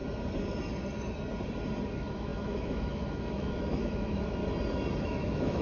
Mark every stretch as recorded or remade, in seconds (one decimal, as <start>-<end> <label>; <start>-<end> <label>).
0.0-1.9 recorded; 1.9-4.4 remade; 4.4-5.0 recorded; 5.0-5.6 remade